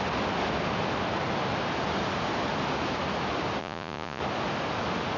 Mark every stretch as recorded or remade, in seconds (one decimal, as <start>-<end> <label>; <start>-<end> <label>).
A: 0.0-3.6 recorded; 3.6-4.2 remade; 4.2-5.2 recorded